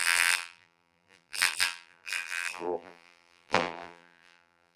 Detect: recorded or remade remade